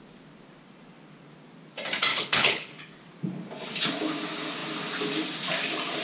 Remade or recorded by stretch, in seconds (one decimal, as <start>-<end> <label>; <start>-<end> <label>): 0.0-2.1 recorded; 2.1-2.9 remade; 2.9-6.0 recorded